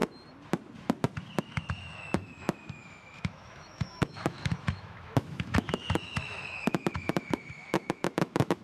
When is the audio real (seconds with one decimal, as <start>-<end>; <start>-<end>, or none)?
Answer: 0.0-1.4